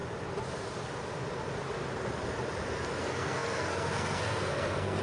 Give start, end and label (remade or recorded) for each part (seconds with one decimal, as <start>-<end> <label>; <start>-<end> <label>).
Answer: 0.0-3.0 recorded; 3.0-5.0 remade